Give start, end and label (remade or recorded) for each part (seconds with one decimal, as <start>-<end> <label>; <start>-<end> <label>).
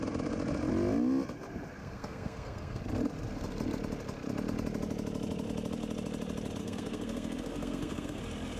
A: 0.0-1.8 recorded; 1.8-2.8 remade; 2.8-6.6 recorded; 6.6-8.2 remade; 8.2-8.6 recorded